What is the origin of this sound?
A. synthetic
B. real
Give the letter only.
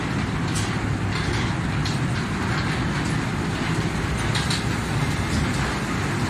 B